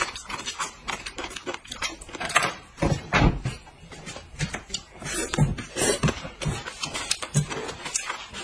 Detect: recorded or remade remade